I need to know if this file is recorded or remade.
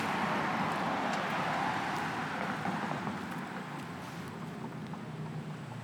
recorded